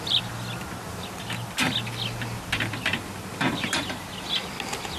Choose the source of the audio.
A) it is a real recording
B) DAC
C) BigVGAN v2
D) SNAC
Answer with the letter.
A